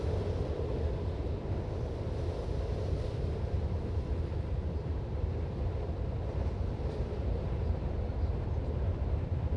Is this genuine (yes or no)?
yes